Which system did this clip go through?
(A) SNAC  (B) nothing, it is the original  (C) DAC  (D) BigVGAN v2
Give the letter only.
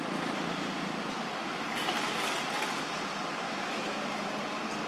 B